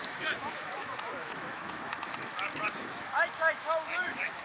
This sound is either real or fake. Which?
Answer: fake